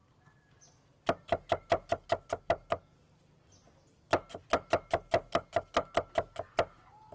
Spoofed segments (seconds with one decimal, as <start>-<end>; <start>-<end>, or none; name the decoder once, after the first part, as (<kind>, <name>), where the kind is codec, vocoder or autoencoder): none